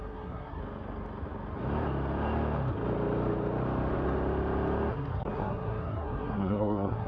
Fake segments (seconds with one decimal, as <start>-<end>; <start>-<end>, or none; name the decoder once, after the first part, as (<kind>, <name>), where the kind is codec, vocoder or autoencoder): 0.0-0.6 (codec, SNAC); 4.9-7.1